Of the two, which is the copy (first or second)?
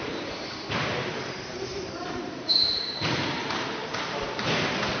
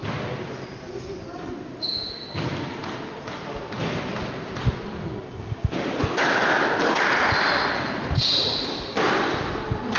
first